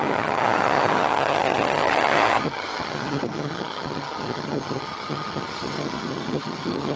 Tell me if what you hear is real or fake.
fake